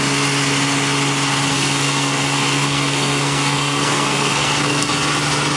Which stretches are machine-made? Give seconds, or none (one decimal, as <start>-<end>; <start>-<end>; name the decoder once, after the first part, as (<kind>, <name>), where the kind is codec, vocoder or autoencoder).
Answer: 1.5-4.9 (codec, SNAC)